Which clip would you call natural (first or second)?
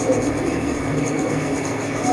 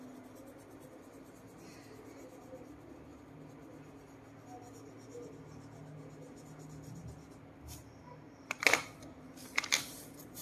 second